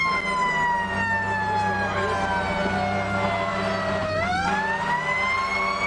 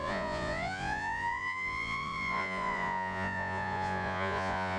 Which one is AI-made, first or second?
second